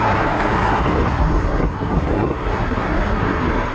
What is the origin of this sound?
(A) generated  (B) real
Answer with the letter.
A